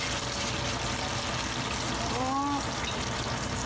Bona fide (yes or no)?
yes